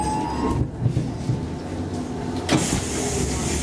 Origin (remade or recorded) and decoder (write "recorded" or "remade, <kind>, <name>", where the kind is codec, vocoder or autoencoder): recorded